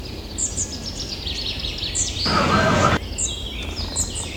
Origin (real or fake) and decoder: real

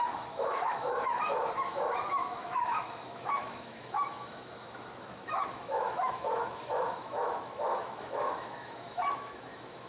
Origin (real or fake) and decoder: fake, autoencoder, DAC-VAE